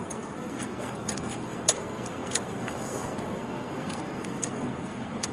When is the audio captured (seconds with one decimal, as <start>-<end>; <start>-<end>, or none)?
none